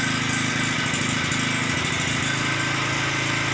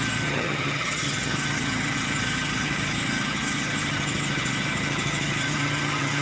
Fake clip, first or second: second